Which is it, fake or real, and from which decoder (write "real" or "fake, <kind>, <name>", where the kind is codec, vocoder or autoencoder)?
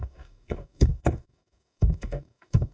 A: fake, codec, DAC